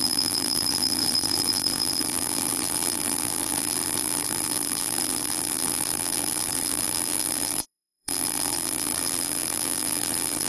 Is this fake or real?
fake